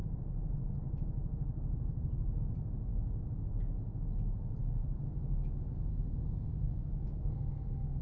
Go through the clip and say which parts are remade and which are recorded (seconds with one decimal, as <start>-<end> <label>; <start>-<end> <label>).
0.0-5.9 recorded; 5.9-8.0 remade